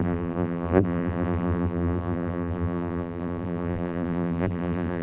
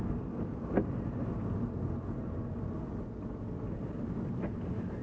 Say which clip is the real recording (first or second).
second